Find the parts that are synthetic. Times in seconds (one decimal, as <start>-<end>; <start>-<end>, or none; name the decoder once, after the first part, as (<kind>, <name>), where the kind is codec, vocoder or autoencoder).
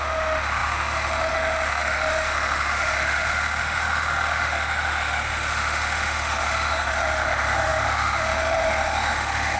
0.0-9.6 (autoencoder, DAC-VAE)